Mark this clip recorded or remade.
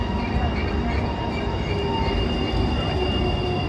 recorded